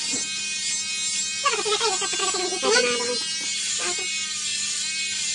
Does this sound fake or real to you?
real